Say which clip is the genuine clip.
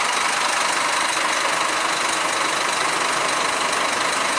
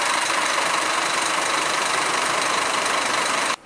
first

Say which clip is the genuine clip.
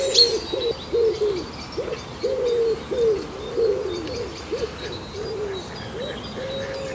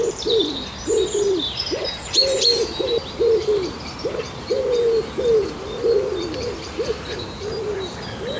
first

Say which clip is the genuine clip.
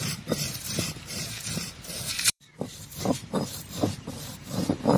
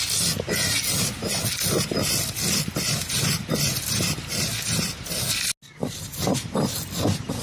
second